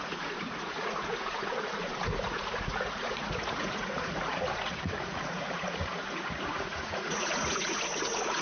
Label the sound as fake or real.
fake